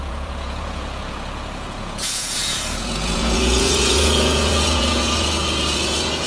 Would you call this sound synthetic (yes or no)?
yes